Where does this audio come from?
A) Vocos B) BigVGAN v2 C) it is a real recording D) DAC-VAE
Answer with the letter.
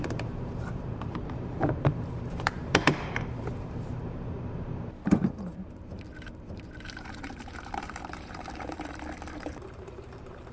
B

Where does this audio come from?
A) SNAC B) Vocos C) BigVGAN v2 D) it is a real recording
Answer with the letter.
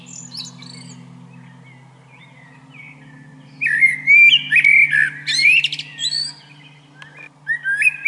D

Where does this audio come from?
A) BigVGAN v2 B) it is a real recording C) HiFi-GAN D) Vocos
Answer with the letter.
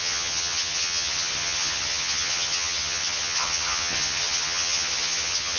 C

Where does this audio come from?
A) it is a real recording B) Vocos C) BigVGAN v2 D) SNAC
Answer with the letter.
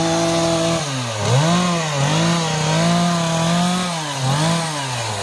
A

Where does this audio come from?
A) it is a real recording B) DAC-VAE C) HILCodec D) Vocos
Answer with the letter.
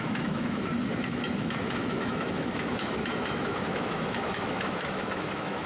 B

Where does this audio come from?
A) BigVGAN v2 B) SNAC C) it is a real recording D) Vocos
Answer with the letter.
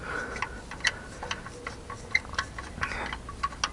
C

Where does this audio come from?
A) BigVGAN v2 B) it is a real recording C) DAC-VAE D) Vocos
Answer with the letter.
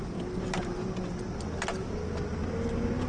B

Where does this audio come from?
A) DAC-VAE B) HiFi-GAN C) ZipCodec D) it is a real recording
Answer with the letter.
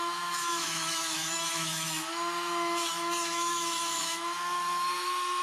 A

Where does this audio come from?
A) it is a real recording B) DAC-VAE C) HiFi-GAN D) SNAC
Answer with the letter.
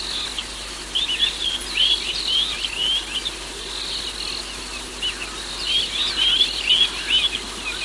A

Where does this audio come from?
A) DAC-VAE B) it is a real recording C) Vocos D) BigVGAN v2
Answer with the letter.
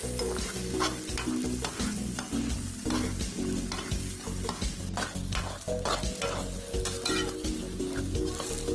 B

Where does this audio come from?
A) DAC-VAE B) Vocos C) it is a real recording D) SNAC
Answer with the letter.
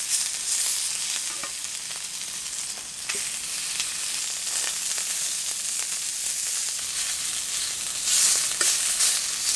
C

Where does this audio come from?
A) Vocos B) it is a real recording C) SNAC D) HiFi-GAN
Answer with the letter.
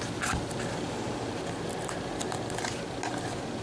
B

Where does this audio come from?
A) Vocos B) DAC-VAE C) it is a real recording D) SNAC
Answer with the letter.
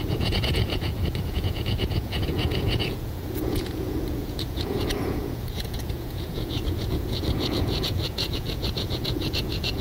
A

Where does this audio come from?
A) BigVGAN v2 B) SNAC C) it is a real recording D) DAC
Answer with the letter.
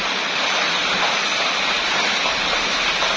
C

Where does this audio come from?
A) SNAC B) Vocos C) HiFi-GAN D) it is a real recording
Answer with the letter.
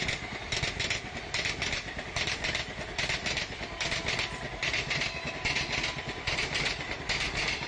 D